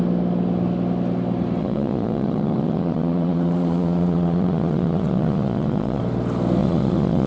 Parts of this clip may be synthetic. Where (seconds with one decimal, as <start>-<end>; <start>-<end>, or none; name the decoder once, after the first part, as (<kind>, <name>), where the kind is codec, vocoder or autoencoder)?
1.6-6.0 (vocoder, Vocos); 6.6-7.3